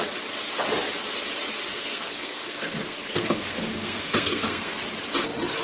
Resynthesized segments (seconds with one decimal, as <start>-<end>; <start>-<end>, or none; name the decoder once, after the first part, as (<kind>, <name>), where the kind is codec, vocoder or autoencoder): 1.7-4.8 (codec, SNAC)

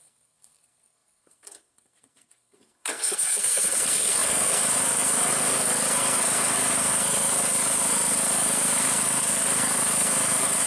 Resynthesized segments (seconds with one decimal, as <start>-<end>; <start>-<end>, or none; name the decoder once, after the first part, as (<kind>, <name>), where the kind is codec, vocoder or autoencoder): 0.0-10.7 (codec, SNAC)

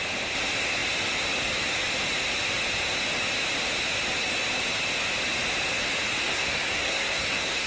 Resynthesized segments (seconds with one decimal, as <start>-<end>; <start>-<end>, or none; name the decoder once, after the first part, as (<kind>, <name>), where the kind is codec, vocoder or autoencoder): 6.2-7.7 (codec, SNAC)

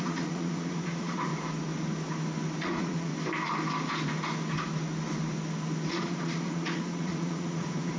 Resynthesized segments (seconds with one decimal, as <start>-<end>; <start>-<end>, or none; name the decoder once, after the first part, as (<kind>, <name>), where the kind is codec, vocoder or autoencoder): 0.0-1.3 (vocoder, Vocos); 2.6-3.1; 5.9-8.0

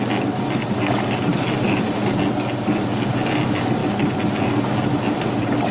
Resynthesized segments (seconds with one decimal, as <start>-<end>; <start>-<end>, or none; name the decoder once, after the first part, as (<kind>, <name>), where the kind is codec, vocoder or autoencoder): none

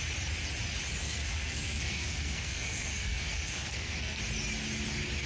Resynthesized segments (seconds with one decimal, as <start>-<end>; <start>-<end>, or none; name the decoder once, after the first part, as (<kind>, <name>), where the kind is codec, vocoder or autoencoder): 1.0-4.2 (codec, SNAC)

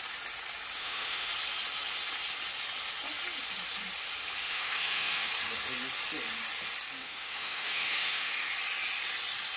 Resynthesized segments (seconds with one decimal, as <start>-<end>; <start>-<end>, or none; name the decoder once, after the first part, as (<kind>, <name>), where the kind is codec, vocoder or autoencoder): 0.8-1.3 (autoencoder, DAC-VAE); 4.4-5.3; 7.0-8.5